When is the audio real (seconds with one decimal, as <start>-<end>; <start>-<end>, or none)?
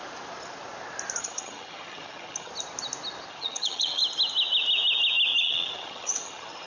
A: 0.0-1.2; 2.5-3.3; 4.0-5.4